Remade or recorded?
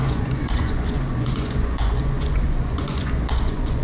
remade